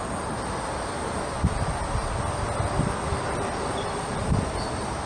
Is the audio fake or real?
real